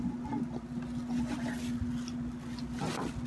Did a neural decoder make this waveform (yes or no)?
no